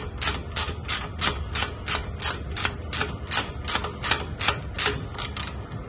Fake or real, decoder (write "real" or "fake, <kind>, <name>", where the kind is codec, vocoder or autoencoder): real